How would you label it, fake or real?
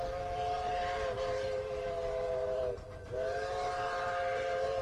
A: fake